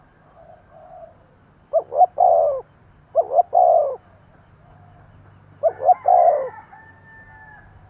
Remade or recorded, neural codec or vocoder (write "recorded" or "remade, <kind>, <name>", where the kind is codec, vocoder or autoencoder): recorded